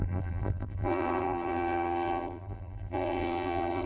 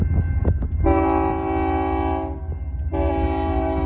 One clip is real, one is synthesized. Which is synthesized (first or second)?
first